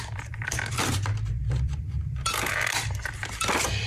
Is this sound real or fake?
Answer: fake